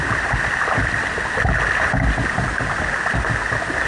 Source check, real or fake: real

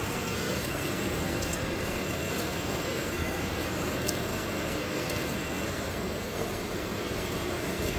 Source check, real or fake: fake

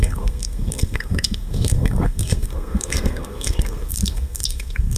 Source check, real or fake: fake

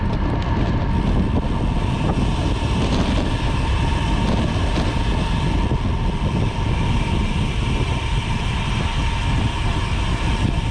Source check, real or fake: real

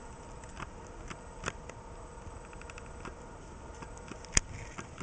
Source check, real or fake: real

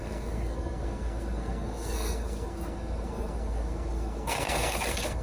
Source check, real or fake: fake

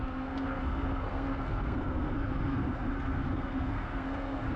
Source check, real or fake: fake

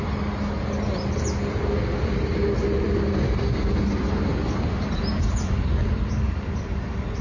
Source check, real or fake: real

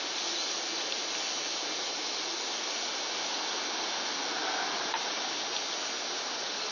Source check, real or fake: real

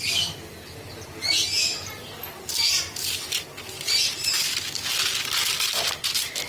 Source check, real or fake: real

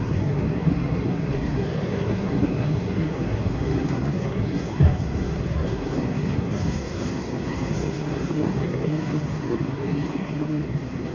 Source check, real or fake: fake